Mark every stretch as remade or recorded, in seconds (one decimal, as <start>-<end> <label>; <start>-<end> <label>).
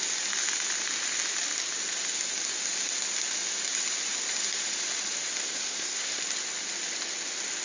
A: 0.0-5.4 recorded; 5.4-6.2 remade; 6.2-7.6 recorded